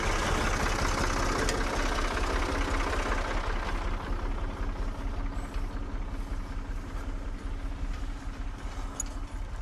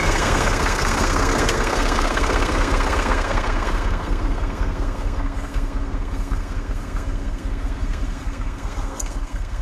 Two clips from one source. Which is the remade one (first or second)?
second